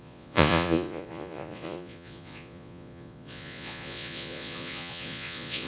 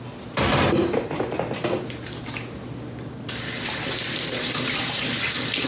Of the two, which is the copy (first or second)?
first